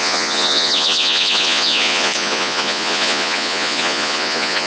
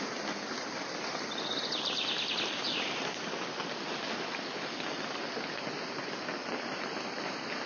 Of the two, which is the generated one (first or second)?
first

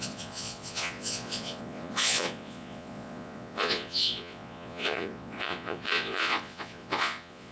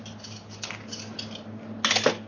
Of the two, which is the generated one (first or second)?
first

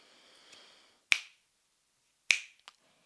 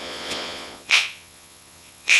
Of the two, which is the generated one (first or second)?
second